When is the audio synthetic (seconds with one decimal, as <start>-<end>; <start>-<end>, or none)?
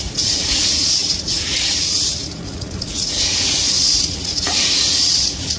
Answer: 0.0-5.6